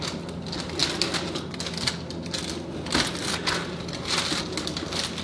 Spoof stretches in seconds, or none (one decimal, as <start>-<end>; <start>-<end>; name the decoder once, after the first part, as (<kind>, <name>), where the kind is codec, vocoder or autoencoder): none